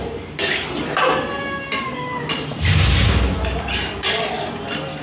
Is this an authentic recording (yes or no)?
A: yes